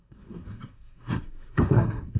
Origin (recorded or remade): remade